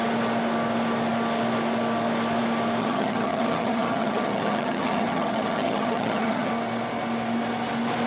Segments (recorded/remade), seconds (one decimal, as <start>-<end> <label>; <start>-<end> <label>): 0.0-2.8 recorded; 2.8-6.5 remade; 6.5-8.1 recorded

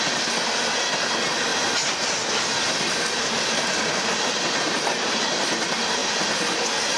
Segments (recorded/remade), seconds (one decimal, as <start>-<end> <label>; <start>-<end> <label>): 0.0-1.5 recorded; 1.5-5.2 remade; 5.2-7.0 recorded

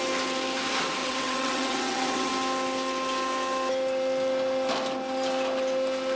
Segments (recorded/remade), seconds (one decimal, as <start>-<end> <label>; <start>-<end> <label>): 0.0-1.0 recorded; 1.0-2.3 remade; 2.3-6.2 recorded

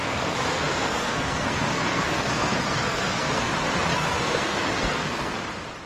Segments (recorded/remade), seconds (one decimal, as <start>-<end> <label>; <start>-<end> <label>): 0.0-3.5 remade; 3.5-3.9 recorded; 3.9-5.4 remade; 5.4-5.9 recorded

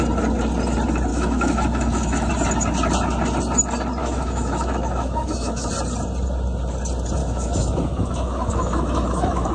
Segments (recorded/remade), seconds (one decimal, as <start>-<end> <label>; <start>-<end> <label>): 0.0-1.1 recorded; 1.1-2.3 remade; 2.3-4.0 recorded; 4.0-5.7 remade; 5.7-7.2 recorded; 7.2-9.5 remade